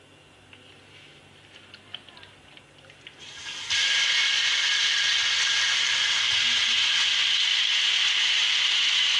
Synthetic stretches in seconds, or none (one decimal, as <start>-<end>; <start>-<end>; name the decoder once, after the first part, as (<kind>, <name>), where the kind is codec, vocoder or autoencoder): none